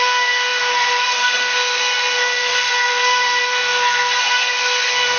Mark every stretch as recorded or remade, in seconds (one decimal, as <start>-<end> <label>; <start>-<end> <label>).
0.0-5.2 remade